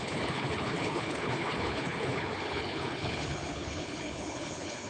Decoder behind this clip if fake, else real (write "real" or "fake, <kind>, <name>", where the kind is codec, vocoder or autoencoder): fake, codec, HILCodec